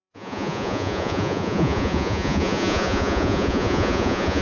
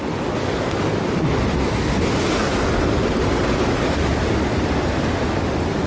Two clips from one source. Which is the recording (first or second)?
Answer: second